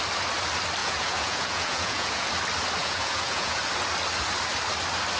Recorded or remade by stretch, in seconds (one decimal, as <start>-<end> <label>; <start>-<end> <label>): 0.0-0.8 recorded; 0.8-2.3 remade; 2.3-2.8 recorded; 2.8-3.6 remade; 3.6-5.2 recorded